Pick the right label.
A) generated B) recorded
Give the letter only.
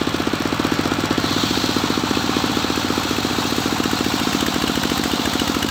B